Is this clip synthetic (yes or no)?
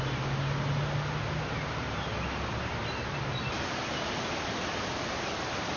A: no